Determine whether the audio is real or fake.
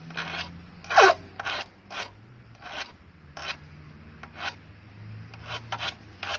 real